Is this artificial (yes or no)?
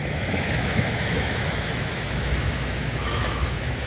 yes